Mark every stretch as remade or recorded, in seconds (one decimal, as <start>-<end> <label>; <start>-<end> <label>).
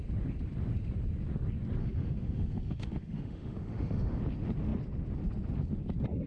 0.0-1.8 recorded; 1.8-4.2 remade; 4.2-6.3 recorded